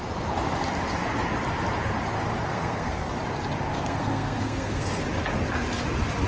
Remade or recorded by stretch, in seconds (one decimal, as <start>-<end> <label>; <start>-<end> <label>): 0.0-2.5 recorded; 2.5-3.1 remade; 3.1-3.7 recorded; 3.7-5.0 remade; 5.0-6.3 recorded